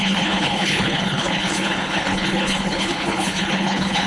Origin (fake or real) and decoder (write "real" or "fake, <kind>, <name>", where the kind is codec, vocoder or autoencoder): fake, codec, HILCodec